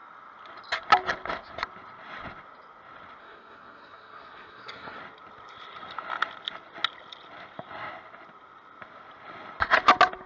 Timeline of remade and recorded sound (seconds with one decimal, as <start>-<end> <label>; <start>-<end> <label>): 0.0-3.2 recorded; 3.2-5.0 remade; 5.0-10.3 recorded